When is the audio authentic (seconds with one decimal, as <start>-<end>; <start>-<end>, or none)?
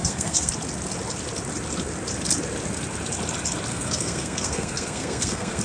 0.5-3.7